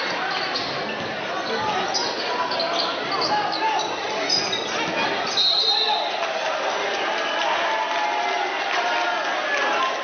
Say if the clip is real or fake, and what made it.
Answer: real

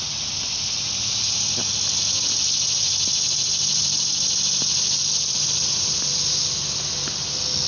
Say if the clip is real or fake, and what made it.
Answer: real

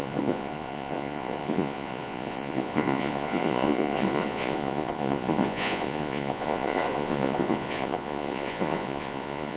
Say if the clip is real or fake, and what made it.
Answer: fake, vocoder, Vocos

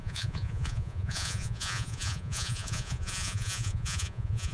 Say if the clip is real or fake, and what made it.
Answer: fake, vocoder, Vocos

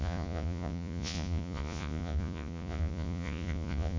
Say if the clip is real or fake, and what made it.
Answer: fake, vocoder, Vocos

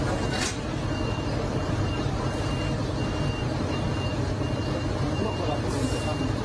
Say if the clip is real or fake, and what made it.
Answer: fake, vocoder, BigVGAN v2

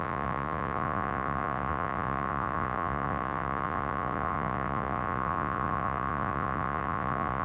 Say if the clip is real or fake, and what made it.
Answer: fake, vocoder, Vocos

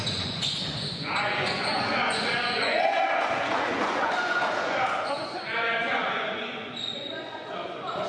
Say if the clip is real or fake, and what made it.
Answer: fake, vocoder, Vocos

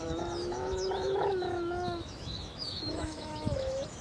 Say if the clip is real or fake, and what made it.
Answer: fake, autoencoder, DAC-VAE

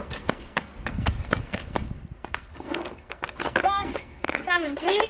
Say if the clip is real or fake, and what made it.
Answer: fake, codec, SNAC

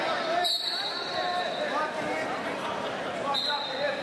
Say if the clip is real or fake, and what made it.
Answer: fake, vocoder, BigVGAN v2